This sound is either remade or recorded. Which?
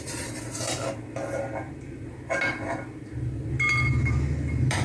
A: recorded